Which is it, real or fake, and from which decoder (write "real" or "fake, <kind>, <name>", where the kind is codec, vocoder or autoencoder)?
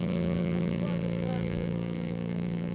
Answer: fake, vocoder, BigVGAN v2